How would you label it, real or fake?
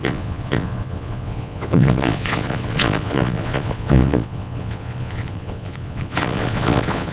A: fake